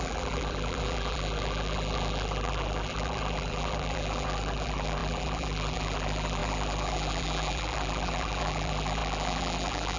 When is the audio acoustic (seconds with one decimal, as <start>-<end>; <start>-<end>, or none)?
none